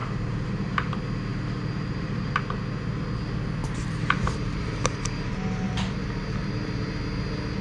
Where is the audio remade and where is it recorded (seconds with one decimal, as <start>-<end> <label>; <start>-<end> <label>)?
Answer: 0.0-0.9 remade; 0.9-1.3 recorded; 1.3-2.4 remade; 2.4-3.6 recorded; 3.6-5.7 remade; 5.7-6.4 recorded; 6.4-7.0 remade; 7.0-7.6 recorded